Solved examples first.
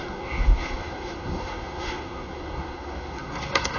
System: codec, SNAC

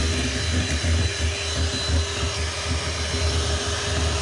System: none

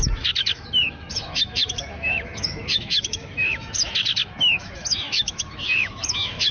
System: autoencoder, DAC-VAE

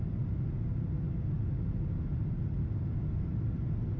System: none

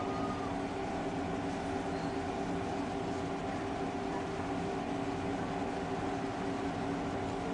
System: none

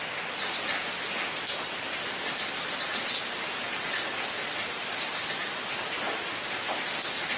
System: none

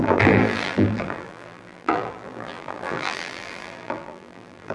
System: vocoder, BigVGAN v2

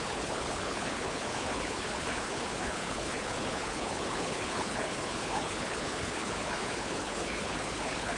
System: codec, HILCodec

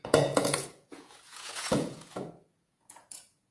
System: vocoder, Vocos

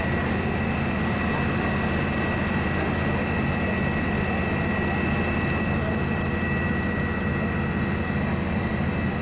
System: none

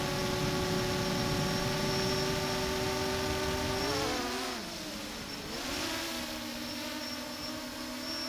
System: none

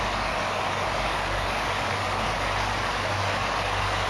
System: codec, DAC